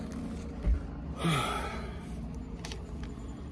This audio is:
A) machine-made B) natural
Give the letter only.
B